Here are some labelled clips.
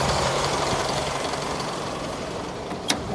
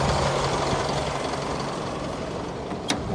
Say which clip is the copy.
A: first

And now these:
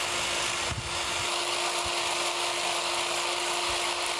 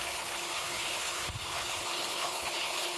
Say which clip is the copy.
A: second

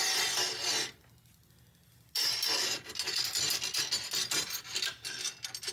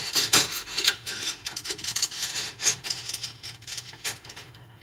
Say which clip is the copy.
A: second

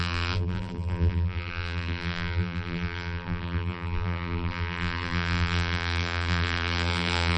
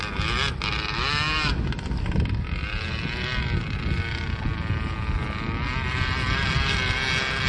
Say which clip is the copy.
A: first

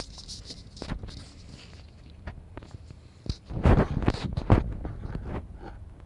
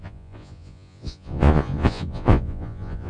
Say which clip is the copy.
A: second